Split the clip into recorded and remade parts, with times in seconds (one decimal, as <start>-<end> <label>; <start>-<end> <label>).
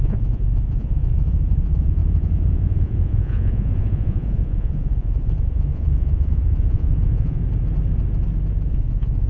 0.0-7.4 remade; 7.4-8.7 recorded; 8.7-9.3 remade